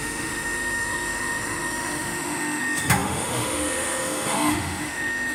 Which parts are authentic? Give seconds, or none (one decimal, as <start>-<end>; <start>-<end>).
none